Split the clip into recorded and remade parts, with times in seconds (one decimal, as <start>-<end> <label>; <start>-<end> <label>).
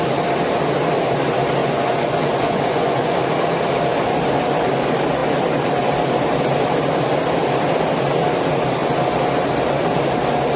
0.0-1.6 recorded; 1.6-3.2 remade; 3.2-10.6 recorded